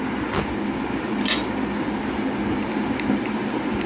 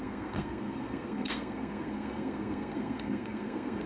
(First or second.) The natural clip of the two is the first